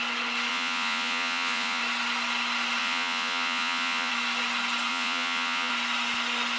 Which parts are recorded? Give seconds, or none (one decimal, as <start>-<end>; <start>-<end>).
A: 0.0-0.5; 1.8-2.8; 4.1-4.9; 5.7-6.6